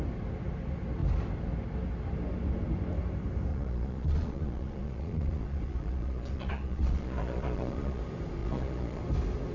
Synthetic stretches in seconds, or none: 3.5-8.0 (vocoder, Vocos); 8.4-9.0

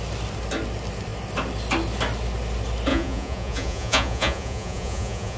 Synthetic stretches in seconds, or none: 2.9-5.4 (vocoder, Vocos)

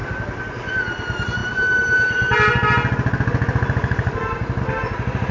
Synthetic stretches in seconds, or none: none